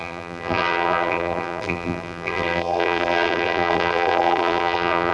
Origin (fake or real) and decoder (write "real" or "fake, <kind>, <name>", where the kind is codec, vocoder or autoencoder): fake, vocoder, BigVGAN v2